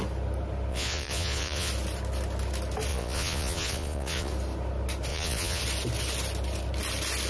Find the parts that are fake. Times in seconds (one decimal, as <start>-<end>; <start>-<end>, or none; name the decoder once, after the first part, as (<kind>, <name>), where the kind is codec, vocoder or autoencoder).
0.7-1.7 (vocoder, Vocos); 2.9-4.3; 5.1-5.6